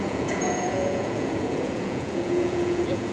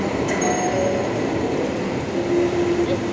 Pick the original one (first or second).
second